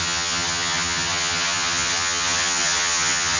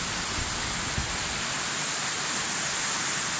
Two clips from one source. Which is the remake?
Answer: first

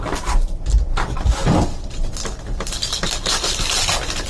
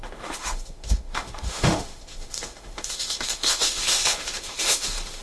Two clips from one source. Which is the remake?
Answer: second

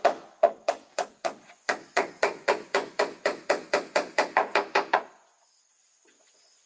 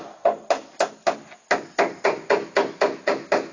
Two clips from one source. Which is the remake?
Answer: first